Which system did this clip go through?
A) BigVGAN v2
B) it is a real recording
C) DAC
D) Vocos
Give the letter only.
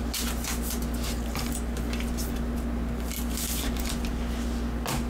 B